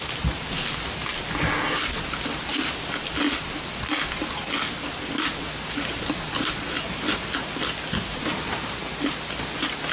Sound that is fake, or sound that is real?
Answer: real